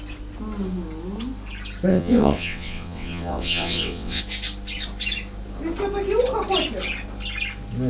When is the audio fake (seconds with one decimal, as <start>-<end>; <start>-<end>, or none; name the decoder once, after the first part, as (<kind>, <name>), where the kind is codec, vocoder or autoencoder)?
1.9-4.2 (vocoder, WaveNeXt)

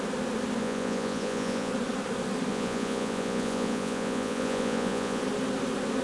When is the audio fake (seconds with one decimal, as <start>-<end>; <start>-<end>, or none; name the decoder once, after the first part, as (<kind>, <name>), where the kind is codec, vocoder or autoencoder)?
0.6-1.7 (vocoder, Vocos); 2.5-5.2

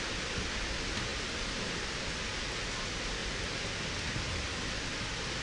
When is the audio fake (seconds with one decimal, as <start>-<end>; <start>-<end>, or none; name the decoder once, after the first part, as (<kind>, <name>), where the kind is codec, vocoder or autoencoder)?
none

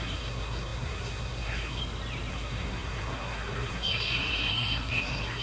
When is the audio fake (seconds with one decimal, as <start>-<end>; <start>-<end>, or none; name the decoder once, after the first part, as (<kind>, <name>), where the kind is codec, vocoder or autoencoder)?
0.0-1.8 (codec, SNAC); 2.3-5.4

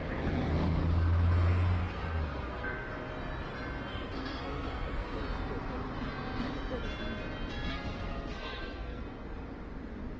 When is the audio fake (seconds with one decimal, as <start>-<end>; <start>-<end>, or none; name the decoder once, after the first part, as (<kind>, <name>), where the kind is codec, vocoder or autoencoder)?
0.0-0.8 (codec, SNAC); 1.8-2.9; 3.9-5.2; 7.7-9.0